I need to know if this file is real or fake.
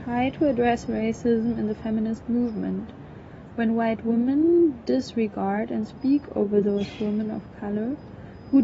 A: real